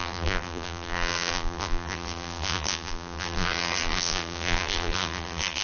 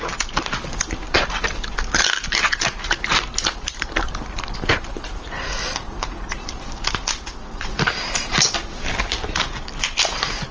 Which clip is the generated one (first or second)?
first